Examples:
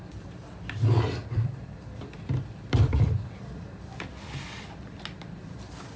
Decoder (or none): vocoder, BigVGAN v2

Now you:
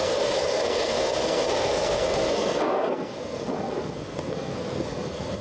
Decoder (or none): codec, SNAC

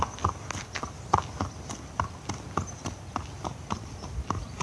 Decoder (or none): none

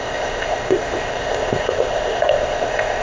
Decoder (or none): codec, ZipCodec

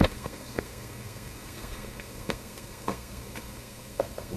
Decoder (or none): codec, SNAC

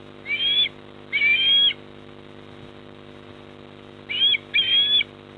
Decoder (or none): none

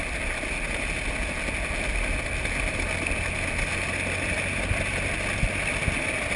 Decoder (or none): none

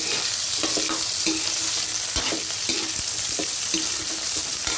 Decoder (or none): none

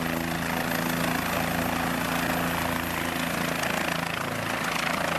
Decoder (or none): none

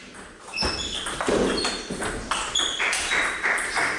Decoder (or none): none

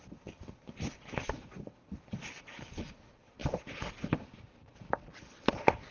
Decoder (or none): none